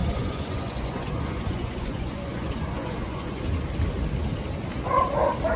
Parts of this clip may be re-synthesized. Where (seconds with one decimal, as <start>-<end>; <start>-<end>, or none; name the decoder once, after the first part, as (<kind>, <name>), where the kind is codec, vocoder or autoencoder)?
0.0-3.4 (vocoder, Vocos)